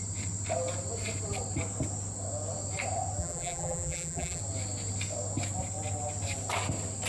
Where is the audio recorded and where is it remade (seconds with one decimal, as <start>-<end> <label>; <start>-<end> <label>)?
0.0-3.2 recorded; 3.2-4.4 remade; 4.4-7.1 recorded